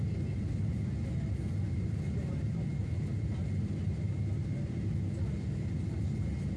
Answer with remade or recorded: recorded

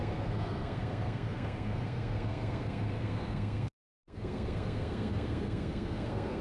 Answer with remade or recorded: remade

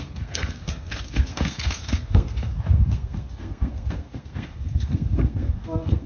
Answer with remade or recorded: remade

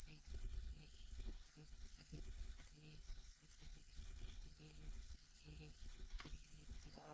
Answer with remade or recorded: remade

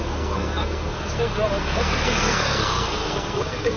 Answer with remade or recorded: remade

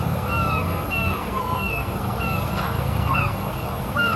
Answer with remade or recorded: remade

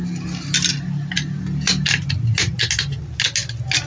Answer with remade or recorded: recorded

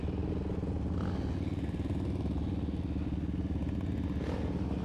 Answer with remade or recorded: recorded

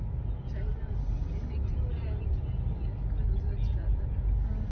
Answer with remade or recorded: recorded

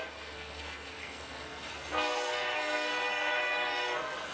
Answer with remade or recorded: remade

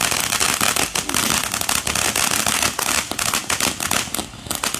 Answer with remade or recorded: recorded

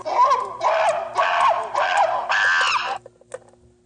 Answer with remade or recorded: recorded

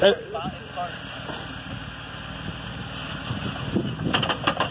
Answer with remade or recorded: recorded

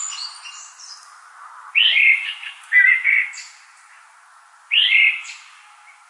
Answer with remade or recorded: recorded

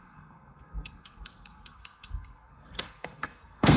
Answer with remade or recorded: remade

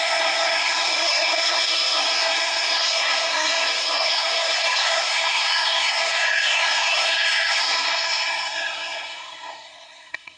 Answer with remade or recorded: remade